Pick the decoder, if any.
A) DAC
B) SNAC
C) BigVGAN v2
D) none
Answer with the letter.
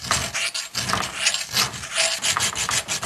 D